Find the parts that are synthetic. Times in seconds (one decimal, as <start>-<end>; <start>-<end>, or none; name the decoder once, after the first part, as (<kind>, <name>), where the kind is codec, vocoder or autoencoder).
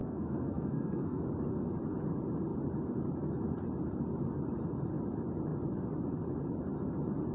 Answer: 0.0-1.2 (codec, SNAC)